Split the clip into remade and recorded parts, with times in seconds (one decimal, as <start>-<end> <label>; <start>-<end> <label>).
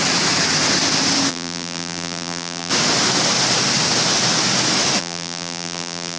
0.0-1.3 recorded; 1.3-2.7 remade; 2.7-5.0 recorded; 5.0-6.2 remade